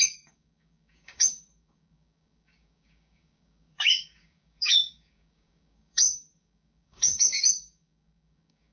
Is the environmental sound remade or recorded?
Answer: remade